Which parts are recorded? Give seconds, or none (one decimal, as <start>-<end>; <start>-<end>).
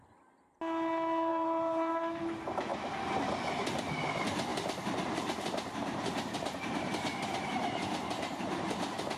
0.0-1.3; 1.9-4.5